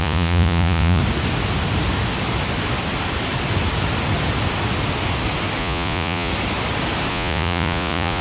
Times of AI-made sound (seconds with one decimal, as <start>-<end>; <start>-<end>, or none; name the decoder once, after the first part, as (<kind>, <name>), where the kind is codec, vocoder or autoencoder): 0.0-1.0 (vocoder, Vocos); 5.6-6.3; 7.1-8.2